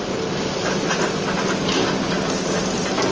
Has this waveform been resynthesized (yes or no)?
no